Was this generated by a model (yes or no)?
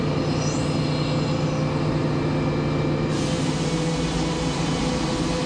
no